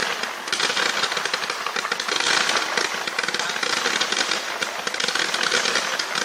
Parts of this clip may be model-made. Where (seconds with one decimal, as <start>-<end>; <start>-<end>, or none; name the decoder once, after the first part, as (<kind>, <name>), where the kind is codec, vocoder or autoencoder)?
none